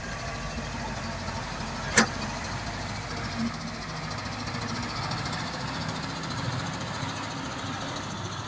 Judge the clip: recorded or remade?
recorded